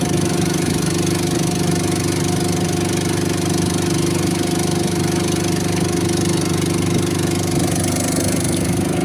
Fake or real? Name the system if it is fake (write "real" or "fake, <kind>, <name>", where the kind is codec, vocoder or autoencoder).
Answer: real